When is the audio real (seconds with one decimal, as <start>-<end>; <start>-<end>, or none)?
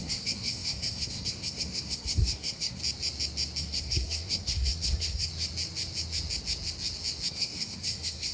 2.8-3.6; 5.3-7.3